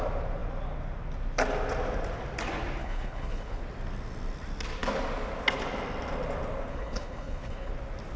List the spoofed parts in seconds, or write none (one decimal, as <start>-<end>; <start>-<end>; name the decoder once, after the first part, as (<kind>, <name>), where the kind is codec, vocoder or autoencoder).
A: 2.8-3.6 (codec, HILCodec); 6.7-7.7